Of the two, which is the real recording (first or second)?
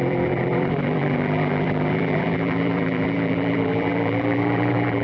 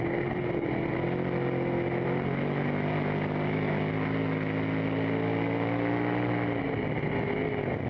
second